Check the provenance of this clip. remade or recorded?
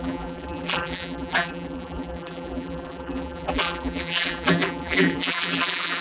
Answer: remade